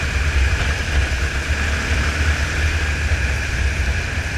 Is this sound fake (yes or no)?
no